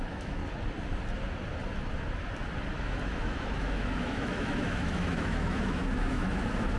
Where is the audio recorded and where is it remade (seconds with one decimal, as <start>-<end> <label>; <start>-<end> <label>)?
0.0-0.4 remade; 0.4-2.8 recorded; 2.8-6.8 remade